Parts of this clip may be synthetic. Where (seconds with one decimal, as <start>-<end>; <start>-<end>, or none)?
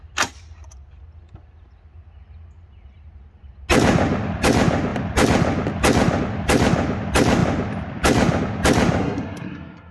9.0-9.9